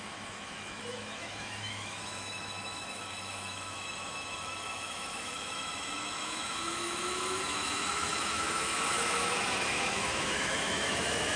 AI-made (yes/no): yes